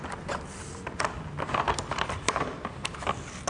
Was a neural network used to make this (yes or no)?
no